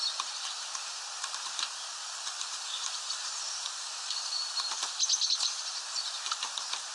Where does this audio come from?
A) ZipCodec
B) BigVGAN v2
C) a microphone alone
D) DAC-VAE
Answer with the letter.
B